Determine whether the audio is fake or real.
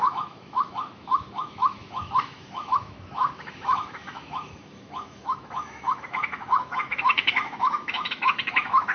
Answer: fake